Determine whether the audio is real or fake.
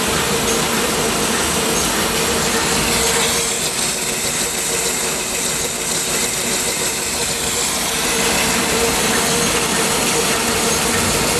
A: real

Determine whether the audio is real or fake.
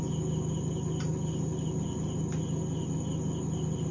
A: real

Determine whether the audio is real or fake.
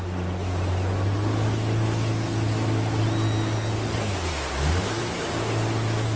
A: real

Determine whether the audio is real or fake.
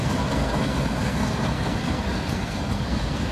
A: fake